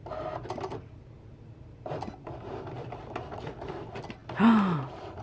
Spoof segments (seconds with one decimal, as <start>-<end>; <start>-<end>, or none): none